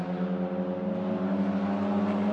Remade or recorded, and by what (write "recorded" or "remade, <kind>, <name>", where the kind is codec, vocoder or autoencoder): recorded